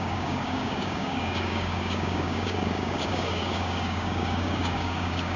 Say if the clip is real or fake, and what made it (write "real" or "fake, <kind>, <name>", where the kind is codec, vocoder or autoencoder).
fake, codec, DAC